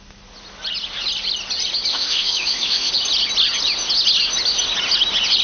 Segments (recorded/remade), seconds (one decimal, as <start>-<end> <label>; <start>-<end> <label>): 0.0-1.9 recorded; 1.9-2.9 remade; 2.9-5.4 recorded